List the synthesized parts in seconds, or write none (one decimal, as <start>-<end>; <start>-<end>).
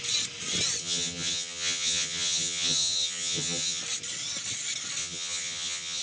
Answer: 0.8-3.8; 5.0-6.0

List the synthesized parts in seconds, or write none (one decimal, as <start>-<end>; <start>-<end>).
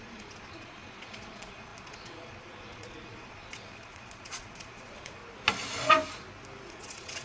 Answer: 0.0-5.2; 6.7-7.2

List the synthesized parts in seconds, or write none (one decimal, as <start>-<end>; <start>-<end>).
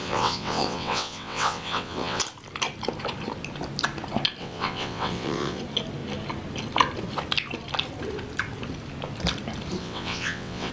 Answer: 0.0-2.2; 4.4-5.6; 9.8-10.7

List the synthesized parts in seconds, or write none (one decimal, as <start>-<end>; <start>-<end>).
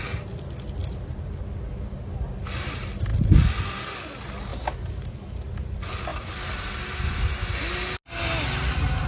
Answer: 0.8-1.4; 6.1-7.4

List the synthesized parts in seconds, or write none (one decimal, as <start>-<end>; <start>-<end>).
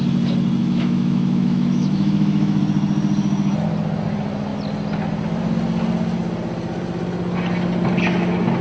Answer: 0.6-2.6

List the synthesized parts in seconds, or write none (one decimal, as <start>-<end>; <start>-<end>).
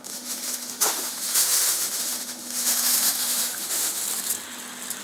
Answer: 0.0-4.0